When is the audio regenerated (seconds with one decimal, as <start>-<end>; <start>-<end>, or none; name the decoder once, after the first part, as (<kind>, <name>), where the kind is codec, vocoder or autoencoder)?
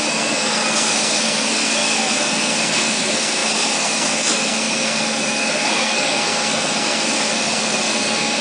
0.0-8.4 (codec, SNAC)